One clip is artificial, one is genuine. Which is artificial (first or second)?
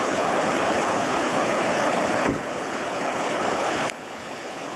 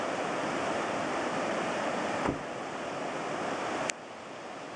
first